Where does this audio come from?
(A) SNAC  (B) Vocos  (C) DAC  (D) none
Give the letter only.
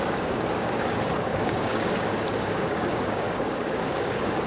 C